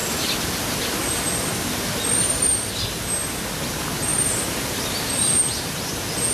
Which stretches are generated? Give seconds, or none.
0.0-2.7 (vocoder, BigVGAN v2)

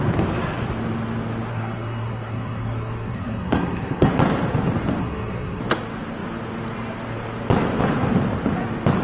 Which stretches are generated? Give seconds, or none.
1.5-4.1 (codec, SNAC); 5.0-5.6

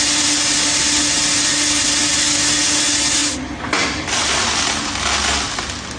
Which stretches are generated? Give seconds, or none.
none